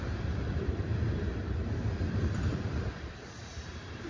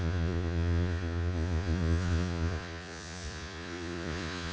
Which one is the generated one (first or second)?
second